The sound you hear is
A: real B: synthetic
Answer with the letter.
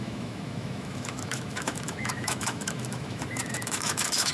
B